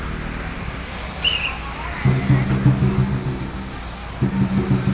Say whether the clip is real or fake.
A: real